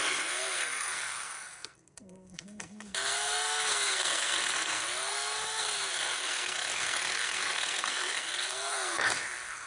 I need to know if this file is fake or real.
fake